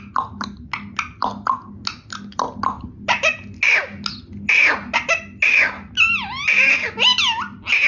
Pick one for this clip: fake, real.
real